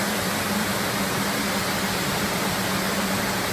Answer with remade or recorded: remade